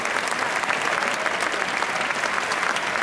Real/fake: real